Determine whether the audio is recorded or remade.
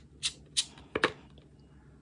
recorded